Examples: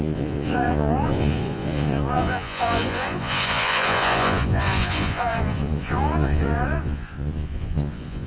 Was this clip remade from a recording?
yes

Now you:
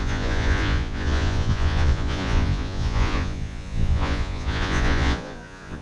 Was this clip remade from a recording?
yes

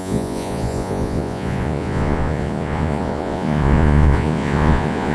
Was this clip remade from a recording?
yes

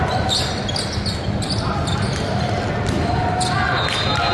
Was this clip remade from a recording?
no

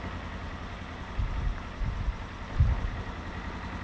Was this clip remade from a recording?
no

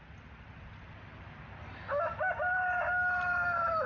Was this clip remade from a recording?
no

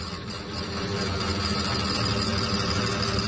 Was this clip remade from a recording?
no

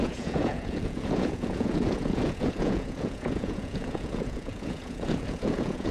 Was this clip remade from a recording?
yes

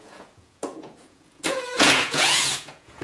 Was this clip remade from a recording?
yes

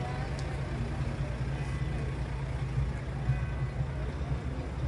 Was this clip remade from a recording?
no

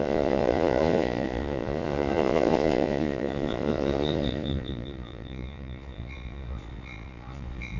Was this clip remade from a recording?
yes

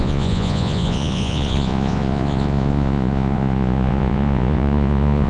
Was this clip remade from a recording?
yes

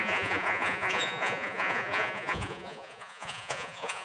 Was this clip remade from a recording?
yes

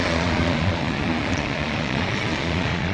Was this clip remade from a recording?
yes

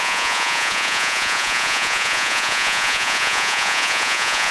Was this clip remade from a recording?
yes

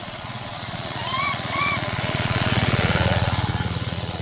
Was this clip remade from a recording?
yes